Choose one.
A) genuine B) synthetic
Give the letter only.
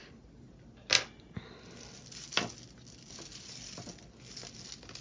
A